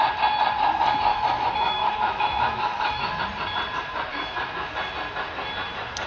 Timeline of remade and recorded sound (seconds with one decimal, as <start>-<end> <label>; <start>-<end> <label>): 0.0-1.1 recorded; 1.1-3.2 remade; 3.2-4.1 recorded; 4.1-4.7 remade; 4.7-6.1 recorded